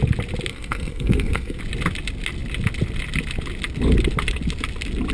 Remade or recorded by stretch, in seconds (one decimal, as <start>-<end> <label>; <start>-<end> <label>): 0.0-0.5 recorded; 0.5-1.6 remade; 1.6-5.1 recorded